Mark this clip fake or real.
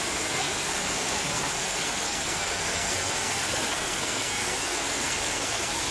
fake